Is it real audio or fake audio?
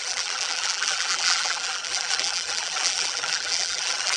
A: fake